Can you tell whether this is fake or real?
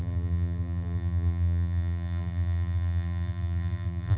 fake